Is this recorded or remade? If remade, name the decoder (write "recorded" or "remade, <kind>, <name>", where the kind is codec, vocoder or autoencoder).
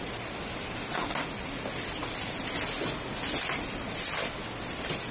recorded